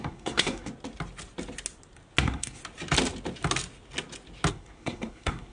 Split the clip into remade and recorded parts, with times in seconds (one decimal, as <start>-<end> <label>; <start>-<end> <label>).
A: 0.0-0.7 remade; 0.7-2.2 recorded; 2.2-2.6 remade; 2.6-4.5 recorded; 4.5-5.5 remade